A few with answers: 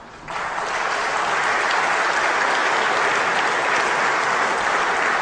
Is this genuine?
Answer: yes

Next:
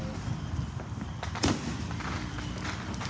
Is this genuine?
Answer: yes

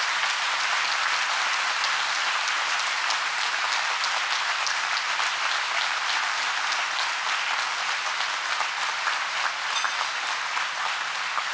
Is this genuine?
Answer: yes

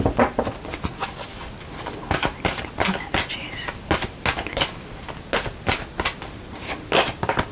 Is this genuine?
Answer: yes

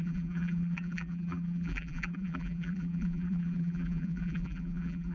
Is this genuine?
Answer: no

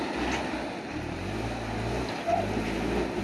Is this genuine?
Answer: yes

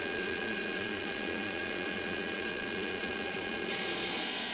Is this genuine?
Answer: no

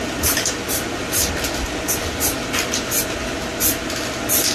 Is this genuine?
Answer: yes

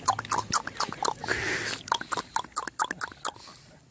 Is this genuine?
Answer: yes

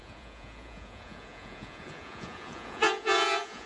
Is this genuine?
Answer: no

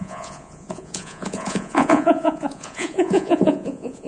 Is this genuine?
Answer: no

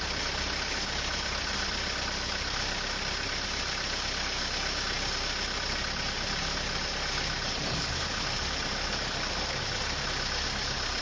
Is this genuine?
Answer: yes